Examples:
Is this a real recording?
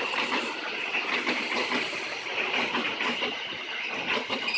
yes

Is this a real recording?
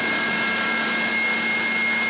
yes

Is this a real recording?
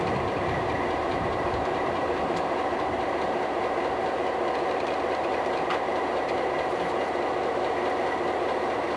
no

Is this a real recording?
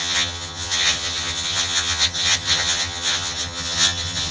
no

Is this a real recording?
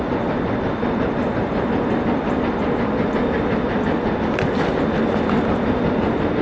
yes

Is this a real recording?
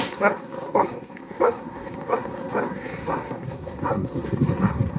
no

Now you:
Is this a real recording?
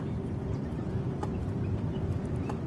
no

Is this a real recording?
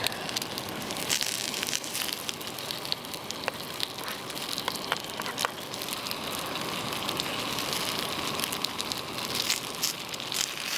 yes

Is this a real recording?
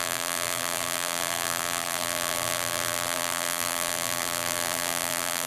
no